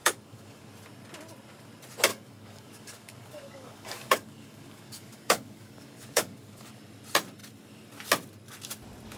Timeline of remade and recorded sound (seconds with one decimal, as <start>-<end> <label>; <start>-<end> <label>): 0.0-0.7 remade; 0.7-2.1 recorded; 2.1-6.7 remade; 6.7-9.2 recorded

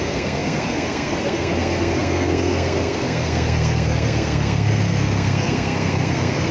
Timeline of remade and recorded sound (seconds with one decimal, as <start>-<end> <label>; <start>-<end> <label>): 0.0-6.5 remade

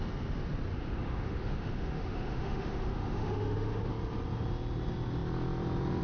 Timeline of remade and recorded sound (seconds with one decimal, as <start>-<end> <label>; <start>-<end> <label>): 0.0-0.7 recorded; 0.7-3.9 remade; 3.9-6.0 recorded

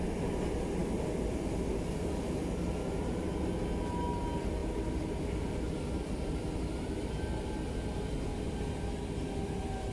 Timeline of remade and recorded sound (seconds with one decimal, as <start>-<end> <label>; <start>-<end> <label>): 0.0-4.6 recorded; 4.6-6.6 remade; 6.6-9.9 recorded

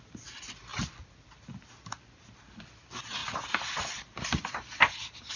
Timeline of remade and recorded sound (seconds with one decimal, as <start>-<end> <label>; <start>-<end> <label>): 0.0-0.7 recorded; 0.7-1.4 remade; 1.4-3.2 recorded; 3.2-4.5 remade; 4.5-5.4 recorded

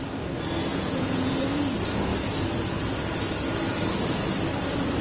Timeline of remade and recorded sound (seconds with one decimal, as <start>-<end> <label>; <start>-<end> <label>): 0.0-0.7 recorded; 0.7-1.3 remade; 1.3-5.0 recorded